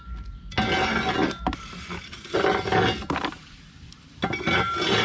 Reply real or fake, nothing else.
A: real